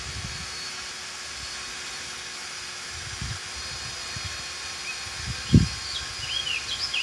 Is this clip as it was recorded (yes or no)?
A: yes